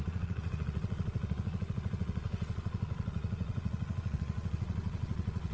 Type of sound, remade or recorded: remade